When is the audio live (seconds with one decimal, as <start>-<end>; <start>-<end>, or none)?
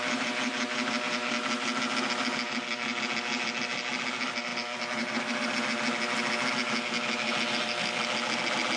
0.0-8.8